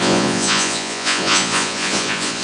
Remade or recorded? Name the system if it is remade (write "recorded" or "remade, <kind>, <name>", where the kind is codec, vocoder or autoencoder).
remade, vocoder, Vocos